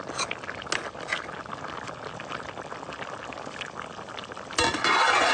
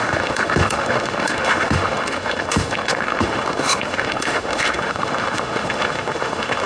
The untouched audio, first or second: first